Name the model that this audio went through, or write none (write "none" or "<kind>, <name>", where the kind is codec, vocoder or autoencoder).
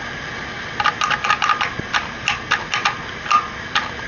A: none